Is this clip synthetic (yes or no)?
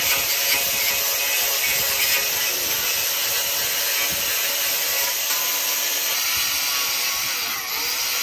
no